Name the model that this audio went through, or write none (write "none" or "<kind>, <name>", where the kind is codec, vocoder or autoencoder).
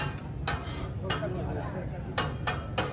none